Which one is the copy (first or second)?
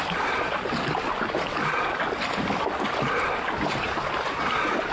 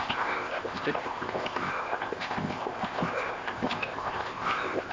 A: second